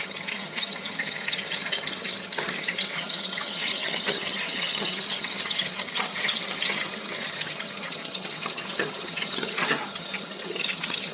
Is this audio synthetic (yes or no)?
yes